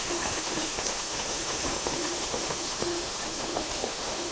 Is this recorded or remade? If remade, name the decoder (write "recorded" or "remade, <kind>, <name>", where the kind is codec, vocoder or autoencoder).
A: remade, autoencoder, DAC-VAE